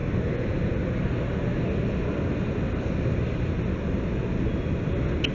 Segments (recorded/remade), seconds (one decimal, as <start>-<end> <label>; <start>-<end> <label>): 0.0-5.3 recorded